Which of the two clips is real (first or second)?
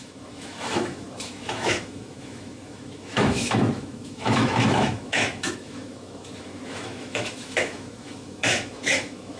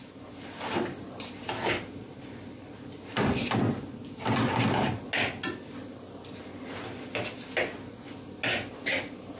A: second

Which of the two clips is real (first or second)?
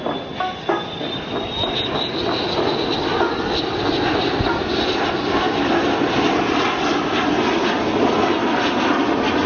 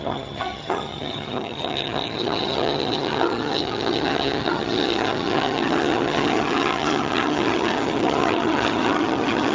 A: first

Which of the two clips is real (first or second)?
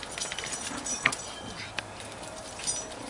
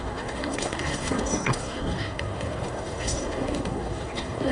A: first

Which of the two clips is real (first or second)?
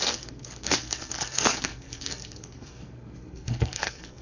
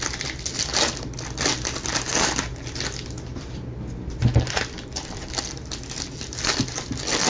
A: second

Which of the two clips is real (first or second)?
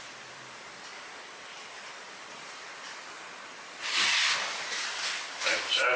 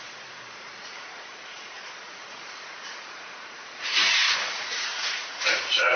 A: first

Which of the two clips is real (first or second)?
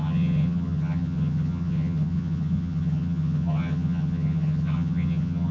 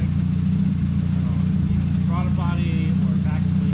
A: second